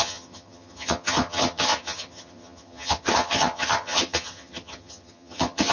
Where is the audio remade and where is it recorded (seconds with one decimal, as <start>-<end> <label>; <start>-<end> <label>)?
0.0-5.7 remade